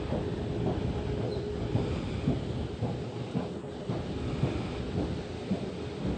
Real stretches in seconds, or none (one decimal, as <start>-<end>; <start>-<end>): 0.0-6.2